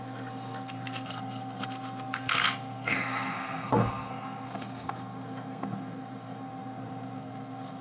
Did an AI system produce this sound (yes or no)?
yes